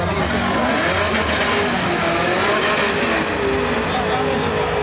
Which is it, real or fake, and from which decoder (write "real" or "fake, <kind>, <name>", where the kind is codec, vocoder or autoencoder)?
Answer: real